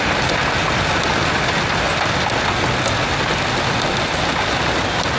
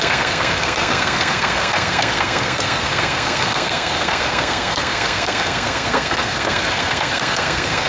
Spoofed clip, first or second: second